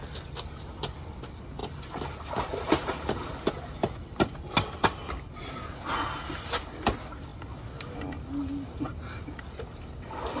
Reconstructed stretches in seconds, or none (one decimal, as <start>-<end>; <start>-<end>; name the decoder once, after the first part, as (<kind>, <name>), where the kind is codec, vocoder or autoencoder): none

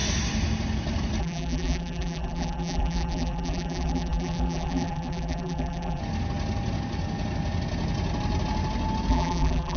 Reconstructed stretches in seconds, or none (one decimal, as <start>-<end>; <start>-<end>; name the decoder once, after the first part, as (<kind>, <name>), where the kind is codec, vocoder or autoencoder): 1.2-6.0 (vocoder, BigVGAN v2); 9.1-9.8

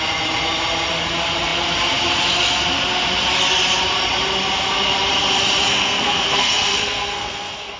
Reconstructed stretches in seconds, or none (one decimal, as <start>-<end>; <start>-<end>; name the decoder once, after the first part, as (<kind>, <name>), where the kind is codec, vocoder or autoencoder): 5.7-7.8 (codec, SNAC)

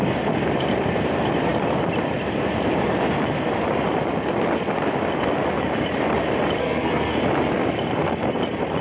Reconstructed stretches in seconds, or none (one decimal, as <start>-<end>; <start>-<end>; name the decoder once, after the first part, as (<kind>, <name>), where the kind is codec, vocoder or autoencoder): 6.6-7.2 (codec, SNAC)